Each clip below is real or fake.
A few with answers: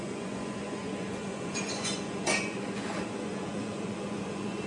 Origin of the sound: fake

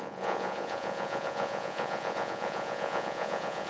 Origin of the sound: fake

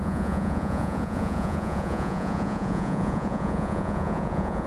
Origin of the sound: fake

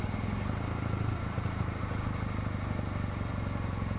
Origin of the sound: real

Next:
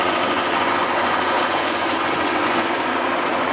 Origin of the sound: fake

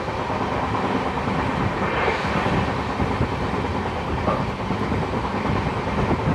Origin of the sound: real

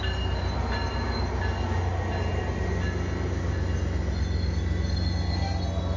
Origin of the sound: real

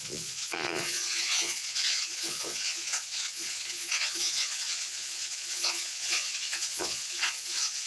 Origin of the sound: fake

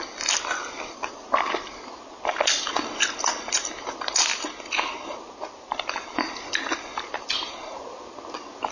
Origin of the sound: real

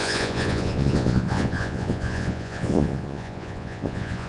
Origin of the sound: fake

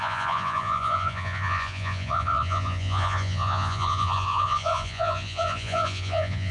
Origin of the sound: fake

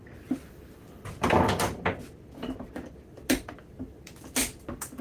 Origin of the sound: real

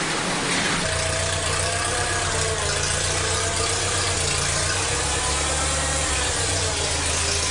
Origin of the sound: real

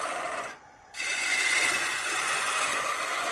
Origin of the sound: fake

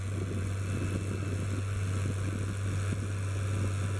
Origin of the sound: real